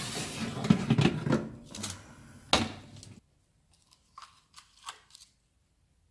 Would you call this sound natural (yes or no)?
yes